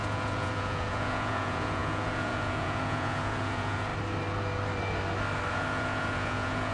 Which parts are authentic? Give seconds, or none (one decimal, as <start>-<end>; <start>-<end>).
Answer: 3.9-5.5